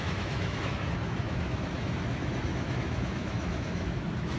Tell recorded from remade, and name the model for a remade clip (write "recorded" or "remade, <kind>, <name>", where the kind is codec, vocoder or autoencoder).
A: remade, autoencoder, DAC-VAE